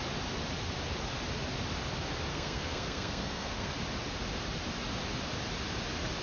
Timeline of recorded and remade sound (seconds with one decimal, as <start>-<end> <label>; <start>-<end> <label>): 0.0-2.3 recorded; 2.3-3.7 remade; 3.7-6.2 recorded